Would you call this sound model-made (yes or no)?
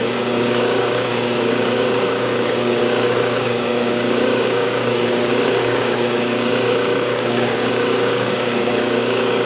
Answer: yes